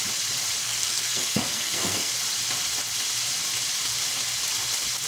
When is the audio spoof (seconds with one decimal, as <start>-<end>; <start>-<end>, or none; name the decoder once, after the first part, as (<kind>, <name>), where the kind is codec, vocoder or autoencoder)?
0.6-2.1 (codec, SNAC)